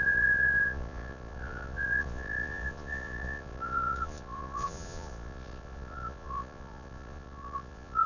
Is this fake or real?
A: fake